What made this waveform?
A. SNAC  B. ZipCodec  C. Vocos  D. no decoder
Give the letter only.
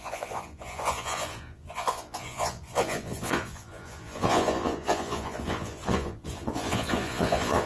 C